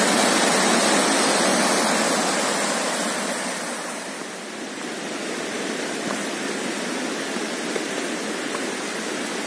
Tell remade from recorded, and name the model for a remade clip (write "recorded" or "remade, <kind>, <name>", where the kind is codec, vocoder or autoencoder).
recorded